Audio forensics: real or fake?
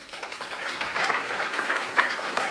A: fake